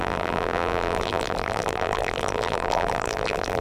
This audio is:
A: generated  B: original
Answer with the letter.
A